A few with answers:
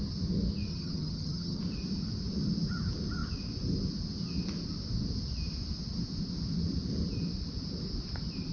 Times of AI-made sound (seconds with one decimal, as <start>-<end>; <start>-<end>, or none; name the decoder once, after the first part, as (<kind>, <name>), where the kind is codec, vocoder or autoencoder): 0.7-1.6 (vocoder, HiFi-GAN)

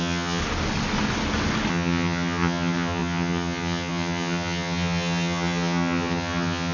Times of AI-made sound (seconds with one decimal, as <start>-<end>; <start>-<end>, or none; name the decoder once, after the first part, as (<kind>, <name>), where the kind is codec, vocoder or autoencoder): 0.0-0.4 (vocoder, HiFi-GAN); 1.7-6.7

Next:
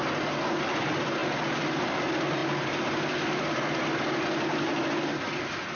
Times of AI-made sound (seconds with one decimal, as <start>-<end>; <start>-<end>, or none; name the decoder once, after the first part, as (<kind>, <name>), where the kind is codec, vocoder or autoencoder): none

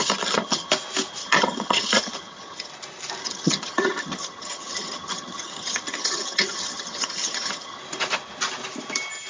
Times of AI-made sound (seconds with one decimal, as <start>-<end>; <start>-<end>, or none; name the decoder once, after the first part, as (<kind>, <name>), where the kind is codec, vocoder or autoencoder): 0.0-0.7 (vocoder, HiFi-GAN); 1.2-2.7; 3.2-7.8